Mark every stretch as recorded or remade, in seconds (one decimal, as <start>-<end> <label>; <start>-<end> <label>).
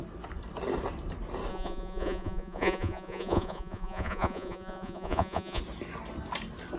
0.0-1.5 recorded; 1.5-5.6 remade; 5.6-6.8 recorded